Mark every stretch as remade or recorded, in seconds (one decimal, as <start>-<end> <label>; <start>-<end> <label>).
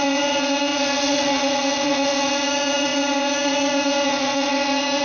0.0-5.0 remade